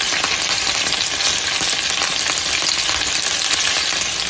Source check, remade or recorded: recorded